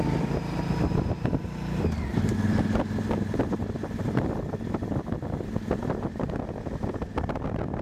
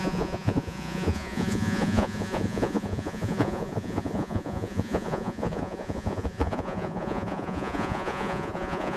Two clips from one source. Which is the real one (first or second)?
first